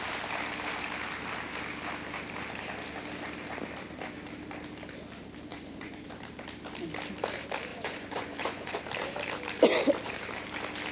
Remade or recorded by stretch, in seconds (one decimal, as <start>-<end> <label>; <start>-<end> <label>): 0.0-5.5 recorded; 5.5-6.1 remade; 6.1-7.7 recorded; 7.7-8.8 remade; 8.8-10.9 recorded